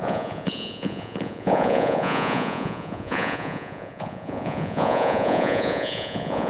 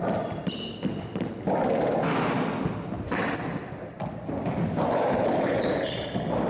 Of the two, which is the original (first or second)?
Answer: second